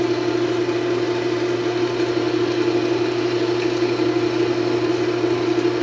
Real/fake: real